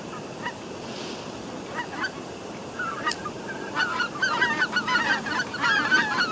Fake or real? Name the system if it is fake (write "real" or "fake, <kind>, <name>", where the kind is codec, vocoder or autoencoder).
real